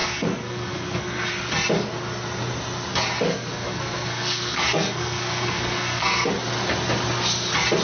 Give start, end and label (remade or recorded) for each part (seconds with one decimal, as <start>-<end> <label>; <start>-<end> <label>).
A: 0.0-1.3 remade; 1.3-3.3 recorded; 3.3-6.3 remade; 6.3-7.8 recorded